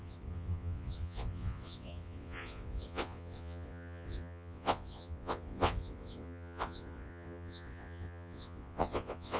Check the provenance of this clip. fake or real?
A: fake